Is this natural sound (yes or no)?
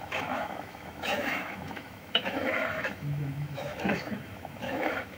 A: no